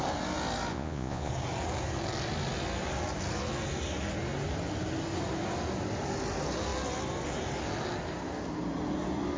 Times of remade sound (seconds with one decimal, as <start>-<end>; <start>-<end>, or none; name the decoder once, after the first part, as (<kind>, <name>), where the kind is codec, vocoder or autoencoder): 0.7-1.3 (vocoder, Vocos)